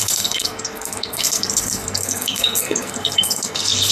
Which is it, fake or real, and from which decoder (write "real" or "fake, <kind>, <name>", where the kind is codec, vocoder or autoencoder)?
fake, codec, SNAC